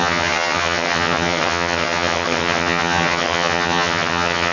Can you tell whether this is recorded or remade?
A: remade